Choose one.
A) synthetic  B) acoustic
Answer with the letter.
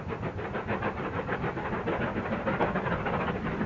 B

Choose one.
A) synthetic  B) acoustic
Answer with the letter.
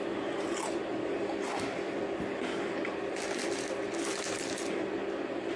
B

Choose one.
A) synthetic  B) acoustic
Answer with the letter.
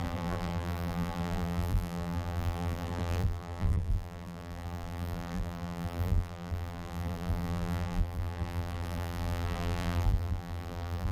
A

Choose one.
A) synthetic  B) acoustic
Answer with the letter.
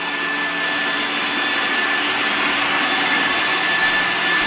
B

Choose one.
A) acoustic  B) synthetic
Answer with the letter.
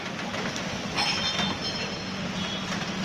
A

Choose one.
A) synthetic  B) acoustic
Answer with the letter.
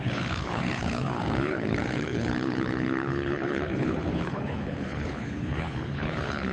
A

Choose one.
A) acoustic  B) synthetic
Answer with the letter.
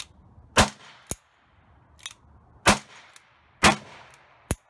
A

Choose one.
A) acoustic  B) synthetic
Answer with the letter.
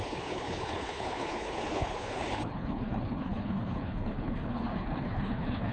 B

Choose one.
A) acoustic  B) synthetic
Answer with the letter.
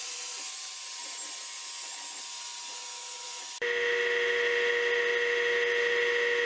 A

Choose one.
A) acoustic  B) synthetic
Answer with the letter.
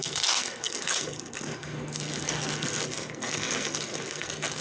B